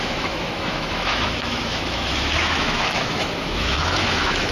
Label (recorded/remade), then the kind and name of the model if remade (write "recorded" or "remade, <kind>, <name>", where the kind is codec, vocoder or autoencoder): remade, autoencoder, DAC-VAE